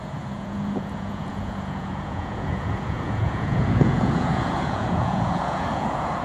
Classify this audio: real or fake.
fake